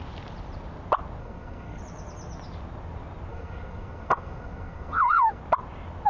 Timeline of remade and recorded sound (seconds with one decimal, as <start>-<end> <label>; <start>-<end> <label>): 0.0-1.2 recorded; 1.2-1.8 remade; 1.8-3.3 recorded; 3.3-5.4 remade; 5.4-6.1 recorded